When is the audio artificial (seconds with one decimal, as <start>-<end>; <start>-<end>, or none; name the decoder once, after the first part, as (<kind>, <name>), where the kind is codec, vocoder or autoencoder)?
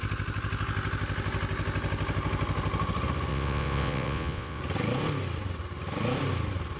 3.3-4.6 (vocoder, WaveNeXt)